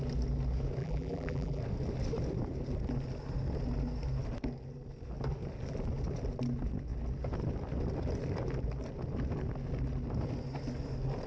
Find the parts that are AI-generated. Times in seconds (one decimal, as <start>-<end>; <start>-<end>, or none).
0.8-1.6

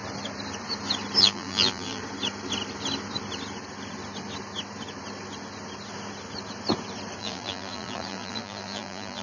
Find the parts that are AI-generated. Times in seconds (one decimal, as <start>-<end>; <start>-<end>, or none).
1.2-2.0; 7.2-9.2